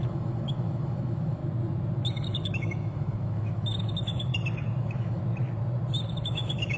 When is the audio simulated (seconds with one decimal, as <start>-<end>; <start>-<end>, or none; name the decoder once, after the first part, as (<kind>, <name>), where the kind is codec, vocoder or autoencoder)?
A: 0.0-1.4 (autoencoder, DAC-VAE); 2.1-4.3; 4.8-5.2; 6.1-6.8